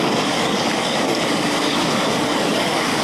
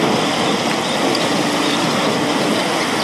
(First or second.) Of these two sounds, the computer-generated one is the first